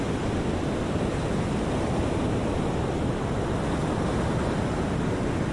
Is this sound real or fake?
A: real